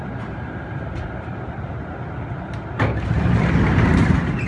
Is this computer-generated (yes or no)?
yes